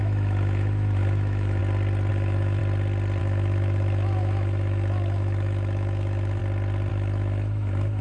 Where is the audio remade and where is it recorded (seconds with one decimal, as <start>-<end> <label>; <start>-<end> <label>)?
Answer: 0.0-1.6 remade; 1.6-2.1 recorded; 2.1-2.6 remade; 2.6-3.2 recorded; 3.2-6.4 remade; 6.4-6.9 recorded; 6.9-8.0 remade